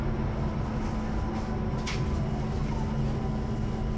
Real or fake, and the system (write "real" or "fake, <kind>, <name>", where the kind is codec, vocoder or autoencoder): real